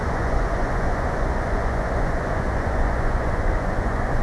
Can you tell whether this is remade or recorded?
remade